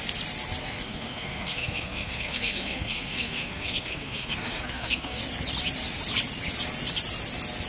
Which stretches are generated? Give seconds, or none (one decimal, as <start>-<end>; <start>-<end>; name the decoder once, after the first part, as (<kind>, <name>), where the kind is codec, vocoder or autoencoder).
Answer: 0.6-5.2 (codec, SNAC)